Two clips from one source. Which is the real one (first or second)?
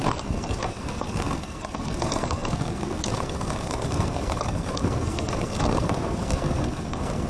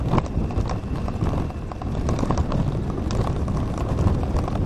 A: second